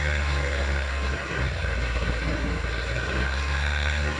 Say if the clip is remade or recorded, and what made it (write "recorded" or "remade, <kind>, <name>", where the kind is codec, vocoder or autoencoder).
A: remade, codec, SNAC